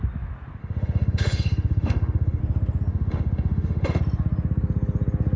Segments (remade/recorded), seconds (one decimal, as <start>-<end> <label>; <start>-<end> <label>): 0.0-0.6 recorded; 0.6-2.4 remade; 2.4-2.9 recorded; 2.9-4.0 remade; 4.0-5.4 recorded